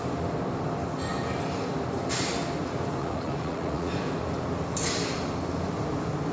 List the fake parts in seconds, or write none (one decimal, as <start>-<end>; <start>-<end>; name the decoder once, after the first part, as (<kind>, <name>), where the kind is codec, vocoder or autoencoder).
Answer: 3.0-3.9 (vocoder, Vocos)